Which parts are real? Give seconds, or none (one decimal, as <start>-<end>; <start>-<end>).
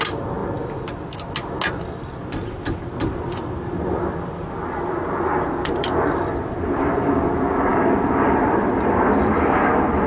0.4-1.7